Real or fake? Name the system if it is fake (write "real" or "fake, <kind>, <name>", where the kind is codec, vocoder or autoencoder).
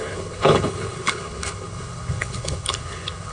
fake, codec, HILCodec